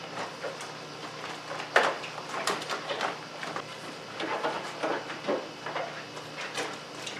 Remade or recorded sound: recorded